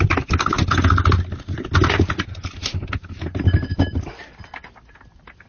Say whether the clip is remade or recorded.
recorded